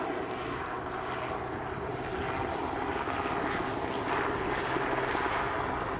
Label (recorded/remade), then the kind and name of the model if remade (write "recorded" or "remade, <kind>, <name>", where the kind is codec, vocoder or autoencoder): recorded